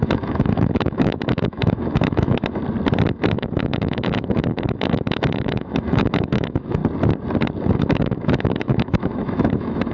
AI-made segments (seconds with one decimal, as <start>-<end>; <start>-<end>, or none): 0.0-2.6; 3.1-6.8; 7.6-9.9